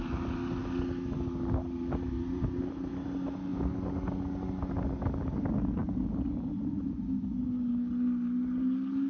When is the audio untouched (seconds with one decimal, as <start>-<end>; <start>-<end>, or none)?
0.0-9.1